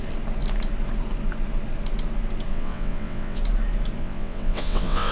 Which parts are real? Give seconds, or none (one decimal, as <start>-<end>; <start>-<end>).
0.0-2.5; 3.4-4.0